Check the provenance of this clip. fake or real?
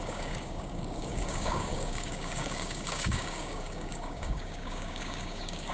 fake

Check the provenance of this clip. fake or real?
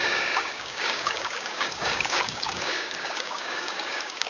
fake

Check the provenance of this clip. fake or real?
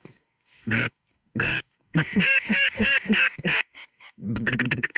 fake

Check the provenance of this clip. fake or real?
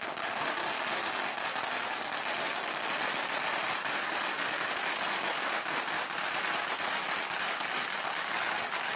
real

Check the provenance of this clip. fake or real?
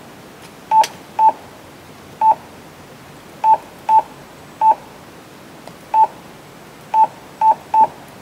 real